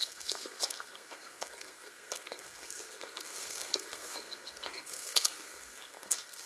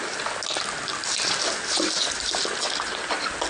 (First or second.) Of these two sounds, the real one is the second